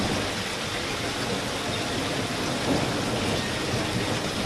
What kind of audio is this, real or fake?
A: real